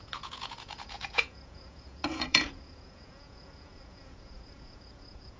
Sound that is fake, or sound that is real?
fake